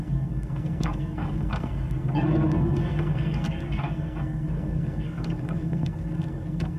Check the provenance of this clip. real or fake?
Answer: fake